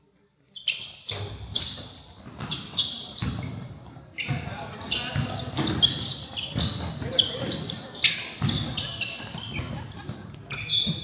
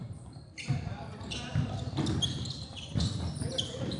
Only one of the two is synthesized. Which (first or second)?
second